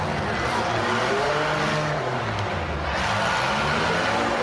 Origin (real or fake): real